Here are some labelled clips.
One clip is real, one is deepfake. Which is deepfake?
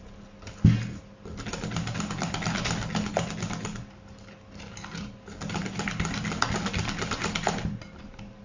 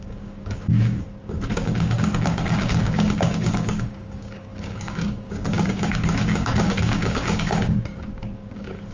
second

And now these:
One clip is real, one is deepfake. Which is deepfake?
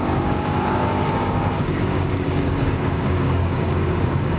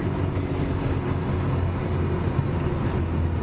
first